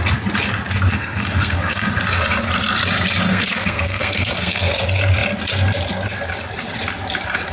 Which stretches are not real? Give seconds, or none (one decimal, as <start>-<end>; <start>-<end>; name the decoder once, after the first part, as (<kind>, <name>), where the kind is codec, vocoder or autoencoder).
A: 0.9-1.9 (codec, SNAC); 3.3-4.7